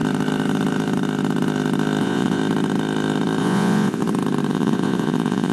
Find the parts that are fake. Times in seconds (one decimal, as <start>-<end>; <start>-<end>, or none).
2.0-2.4; 3.4-4.0; 4.5-5.5